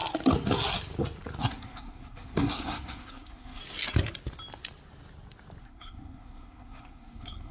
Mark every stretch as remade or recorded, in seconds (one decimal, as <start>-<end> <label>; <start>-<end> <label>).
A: 0.0-1.4 recorded; 1.4-3.6 remade; 3.6-5.6 recorded; 5.6-7.5 remade